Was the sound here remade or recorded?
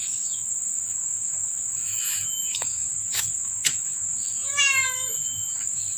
remade